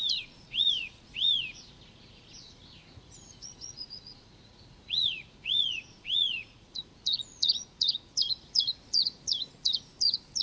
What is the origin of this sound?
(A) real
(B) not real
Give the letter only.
B